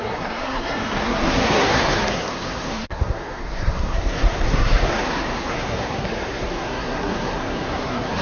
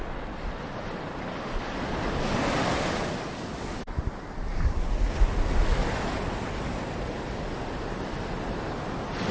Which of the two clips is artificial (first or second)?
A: first